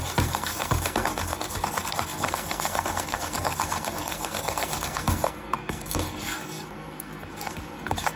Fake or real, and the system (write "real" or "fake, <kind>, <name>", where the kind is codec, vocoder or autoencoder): fake, codec, SNAC